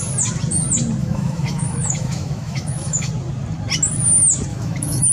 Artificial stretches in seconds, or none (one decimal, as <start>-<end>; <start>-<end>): 1.0-3.1; 4.5-5.1